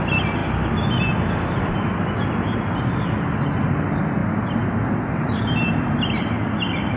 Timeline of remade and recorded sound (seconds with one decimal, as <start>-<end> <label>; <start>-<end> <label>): 0.0-7.0 recorded